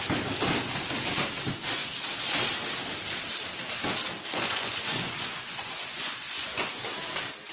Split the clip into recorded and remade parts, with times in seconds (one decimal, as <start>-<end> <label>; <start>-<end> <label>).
0.0-4.3 recorded; 4.3-6.8 remade; 6.8-7.5 recorded